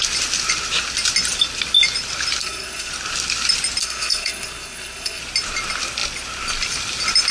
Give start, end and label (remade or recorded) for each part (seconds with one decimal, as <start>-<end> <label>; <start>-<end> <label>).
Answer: 0.0-2.4 recorded; 2.4-2.9 remade; 2.9-3.8 recorded; 3.8-5.2 remade; 5.2-7.3 recorded